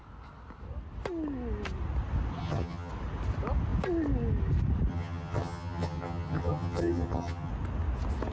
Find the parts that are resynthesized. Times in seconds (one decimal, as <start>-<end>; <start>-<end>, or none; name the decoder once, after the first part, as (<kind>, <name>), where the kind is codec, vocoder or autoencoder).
2.4-2.9 (vocoder, HiFi-GAN); 4.9-7.5